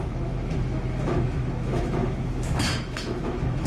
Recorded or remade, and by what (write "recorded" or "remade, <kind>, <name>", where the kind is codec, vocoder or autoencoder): remade, autoencoder, DAC-VAE